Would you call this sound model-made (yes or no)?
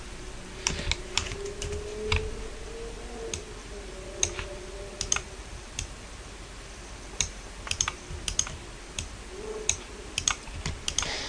yes